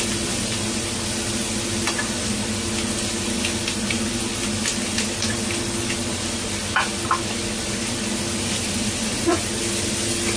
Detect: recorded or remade recorded